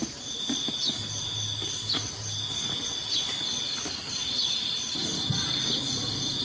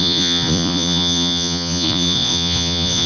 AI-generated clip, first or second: second